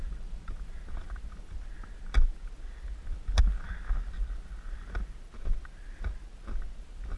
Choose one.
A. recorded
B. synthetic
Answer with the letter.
A